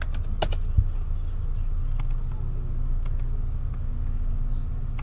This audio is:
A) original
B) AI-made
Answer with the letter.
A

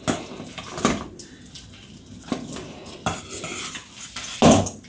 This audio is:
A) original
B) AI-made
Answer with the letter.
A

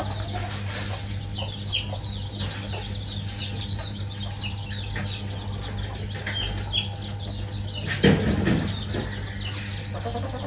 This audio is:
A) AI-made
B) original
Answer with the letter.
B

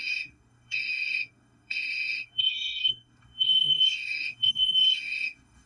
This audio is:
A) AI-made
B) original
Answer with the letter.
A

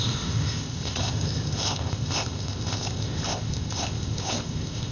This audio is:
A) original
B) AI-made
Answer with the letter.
B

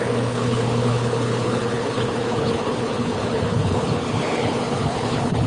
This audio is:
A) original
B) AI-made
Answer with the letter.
B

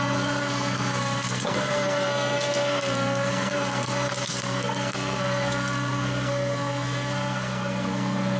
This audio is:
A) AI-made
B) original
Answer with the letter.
A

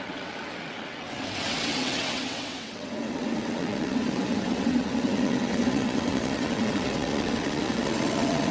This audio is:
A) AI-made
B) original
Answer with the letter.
A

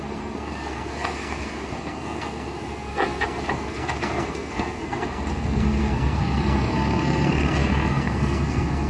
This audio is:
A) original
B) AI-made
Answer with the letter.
B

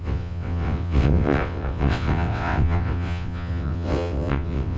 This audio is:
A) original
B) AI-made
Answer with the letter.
B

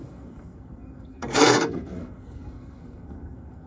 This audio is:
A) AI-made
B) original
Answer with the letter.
A